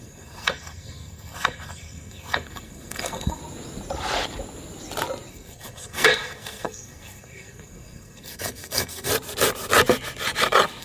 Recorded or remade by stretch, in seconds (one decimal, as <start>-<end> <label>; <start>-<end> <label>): 0.0-3.4 remade; 3.4-5.3 recorded; 5.3-9.1 remade; 9.1-10.8 recorded